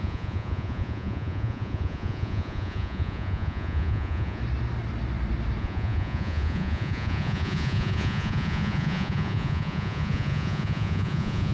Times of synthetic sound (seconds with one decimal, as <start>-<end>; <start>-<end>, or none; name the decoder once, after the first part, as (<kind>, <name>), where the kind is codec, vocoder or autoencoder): 0.0-4.4 (vocoder, Vocos); 5.6-11.5